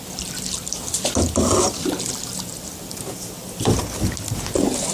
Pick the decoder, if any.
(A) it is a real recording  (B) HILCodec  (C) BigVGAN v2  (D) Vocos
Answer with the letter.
A